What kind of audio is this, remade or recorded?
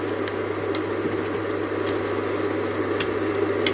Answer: recorded